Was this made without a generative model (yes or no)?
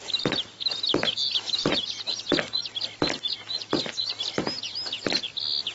yes